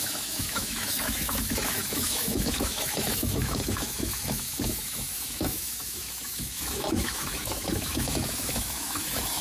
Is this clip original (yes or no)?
no